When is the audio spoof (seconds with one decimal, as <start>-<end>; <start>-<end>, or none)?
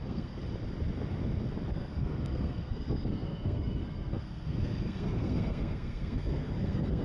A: 0.0-0.4; 1.7-7.0